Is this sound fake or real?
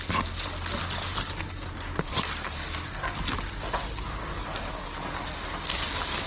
real